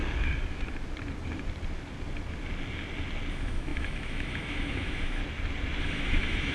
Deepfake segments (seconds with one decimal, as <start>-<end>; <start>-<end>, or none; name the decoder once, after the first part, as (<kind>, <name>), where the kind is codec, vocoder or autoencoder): 3.3-5.2 (autoencoder, DAC-VAE); 5.8-6.5